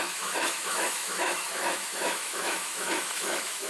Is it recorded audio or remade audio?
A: remade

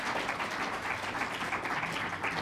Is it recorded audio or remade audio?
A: recorded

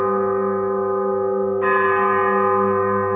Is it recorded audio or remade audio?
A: recorded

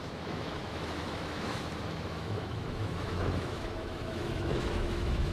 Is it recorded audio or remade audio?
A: remade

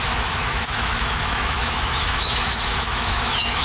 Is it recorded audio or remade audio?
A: remade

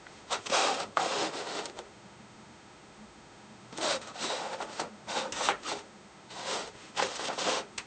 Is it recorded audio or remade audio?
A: remade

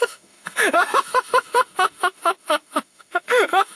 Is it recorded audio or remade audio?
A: remade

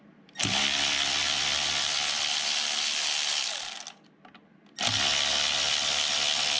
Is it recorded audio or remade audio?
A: recorded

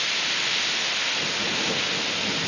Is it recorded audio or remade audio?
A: recorded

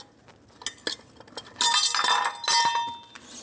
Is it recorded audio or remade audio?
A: recorded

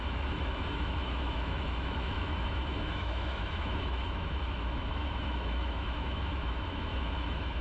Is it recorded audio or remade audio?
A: remade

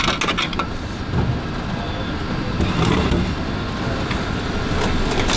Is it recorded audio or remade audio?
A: recorded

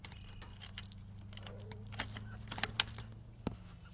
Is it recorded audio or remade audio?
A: recorded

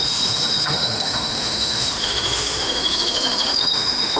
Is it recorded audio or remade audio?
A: remade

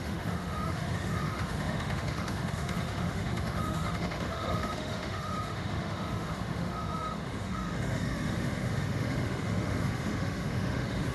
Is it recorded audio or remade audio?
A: remade